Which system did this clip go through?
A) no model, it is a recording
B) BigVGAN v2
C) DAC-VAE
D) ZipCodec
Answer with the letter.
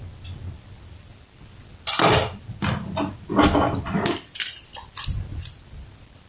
A